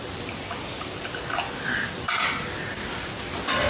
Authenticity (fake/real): real